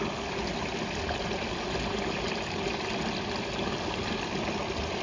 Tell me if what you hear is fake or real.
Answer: real